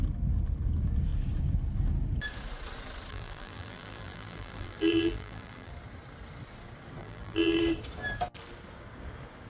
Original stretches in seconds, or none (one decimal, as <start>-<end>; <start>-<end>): 0.0-3.1; 5.7-7.0; 7.6-9.5